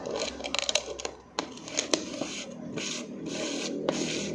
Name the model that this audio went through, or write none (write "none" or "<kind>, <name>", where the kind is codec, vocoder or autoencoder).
none